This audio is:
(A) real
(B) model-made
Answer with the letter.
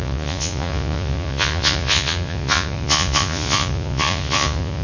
B